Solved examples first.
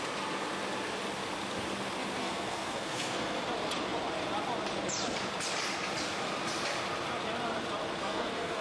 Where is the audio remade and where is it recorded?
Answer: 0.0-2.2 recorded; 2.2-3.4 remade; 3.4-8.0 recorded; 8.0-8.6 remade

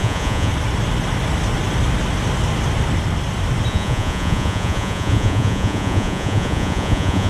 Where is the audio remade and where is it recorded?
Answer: 0.0-0.5 remade; 0.5-3.7 recorded; 3.7-7.3 remade

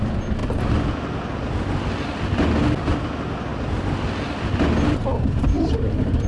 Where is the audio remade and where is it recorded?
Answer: 0.0-6.3 recorded

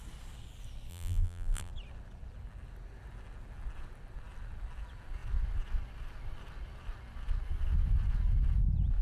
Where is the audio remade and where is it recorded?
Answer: 0.0-0.9 recorded; 0.9-1.7 remade; 1.7-9.0 recorded

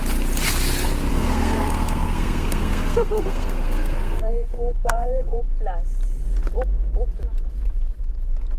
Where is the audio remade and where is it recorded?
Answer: 0.0-1.1 recorded; 1.1-5.4 remade; 5.4-8.6 recorded